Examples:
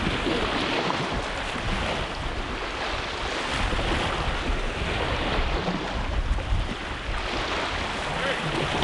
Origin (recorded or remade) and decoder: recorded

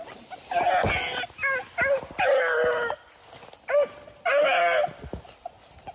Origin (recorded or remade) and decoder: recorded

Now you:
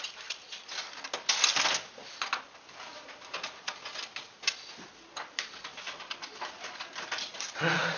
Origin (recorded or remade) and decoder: recorded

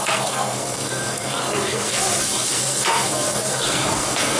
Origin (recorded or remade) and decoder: remade, codec, SNAC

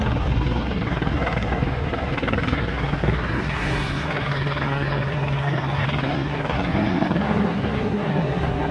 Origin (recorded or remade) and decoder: remade, codec, SNAC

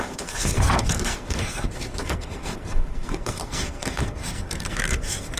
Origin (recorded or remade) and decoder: remade, codec, SNAC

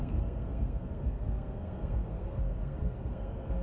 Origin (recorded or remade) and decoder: remade, codec, SNAC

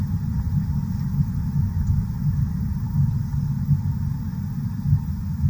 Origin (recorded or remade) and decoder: recorded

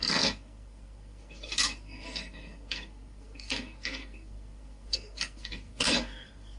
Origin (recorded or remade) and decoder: remade, codec, SNAC